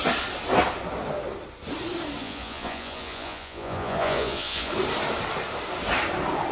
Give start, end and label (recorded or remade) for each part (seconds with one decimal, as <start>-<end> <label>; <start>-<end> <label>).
0.0-2.2 recorded; 2.2-4.7 remade; 4.7-6.5 recorded